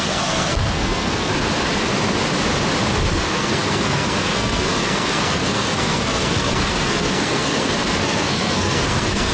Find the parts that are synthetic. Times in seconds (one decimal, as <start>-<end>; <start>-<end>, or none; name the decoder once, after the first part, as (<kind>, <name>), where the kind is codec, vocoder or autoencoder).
0.0-1.3 (codec, SNAC); 3.1-9.3